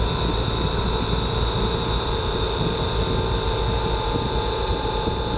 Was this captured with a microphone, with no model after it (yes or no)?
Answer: no